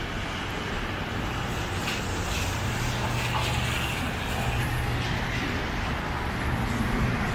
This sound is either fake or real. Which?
real